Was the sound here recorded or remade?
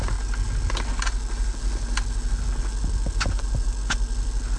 recorded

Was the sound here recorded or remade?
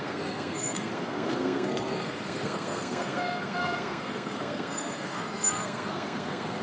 remade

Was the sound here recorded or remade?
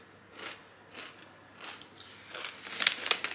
recorded